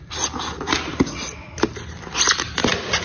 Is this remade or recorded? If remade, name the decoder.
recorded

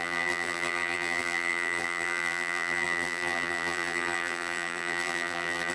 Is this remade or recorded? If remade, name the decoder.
remade, vocoder, BigVGAN v2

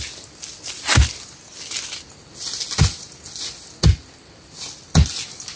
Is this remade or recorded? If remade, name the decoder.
recorded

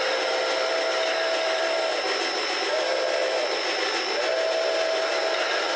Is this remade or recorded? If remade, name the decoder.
recorded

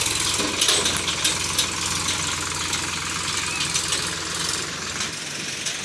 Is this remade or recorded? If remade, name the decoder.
recorded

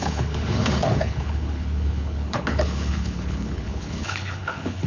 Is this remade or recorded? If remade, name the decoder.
remade, codec, HILCodec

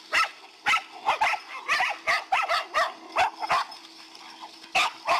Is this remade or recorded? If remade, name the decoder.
recorded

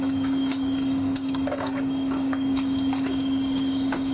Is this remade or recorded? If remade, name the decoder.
remade, codec, DAC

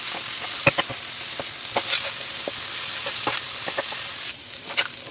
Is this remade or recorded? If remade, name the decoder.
recorded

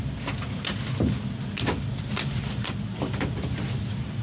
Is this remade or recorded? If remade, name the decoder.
recorded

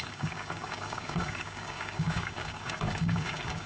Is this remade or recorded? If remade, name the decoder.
remade, codec, DAC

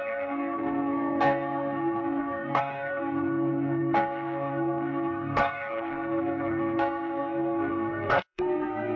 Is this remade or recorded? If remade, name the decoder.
remade, codec, SNAC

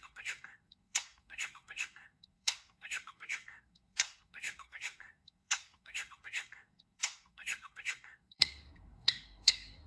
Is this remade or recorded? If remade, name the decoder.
remade, codec, SNAC